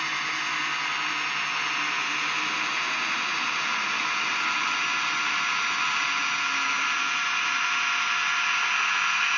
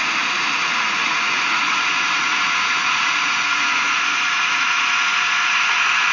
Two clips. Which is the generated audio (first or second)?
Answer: second